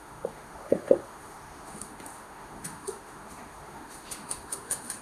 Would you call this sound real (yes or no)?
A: no